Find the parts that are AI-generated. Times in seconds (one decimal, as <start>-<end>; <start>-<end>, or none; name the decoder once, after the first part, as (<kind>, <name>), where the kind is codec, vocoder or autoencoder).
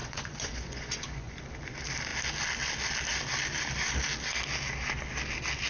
0.0-1.4 (vocoder, Vocos)